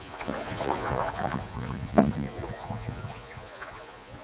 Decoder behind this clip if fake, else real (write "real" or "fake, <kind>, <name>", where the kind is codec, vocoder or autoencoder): fake, vocoder, Vocos